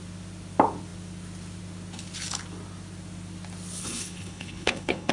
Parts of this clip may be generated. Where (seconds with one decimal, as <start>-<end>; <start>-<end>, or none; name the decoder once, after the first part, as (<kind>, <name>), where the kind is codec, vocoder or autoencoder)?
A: 3.8-5.1 (codec, HILCodec)